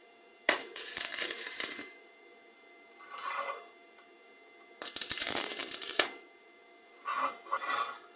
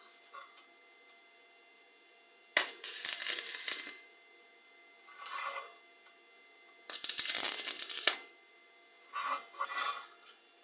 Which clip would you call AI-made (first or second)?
first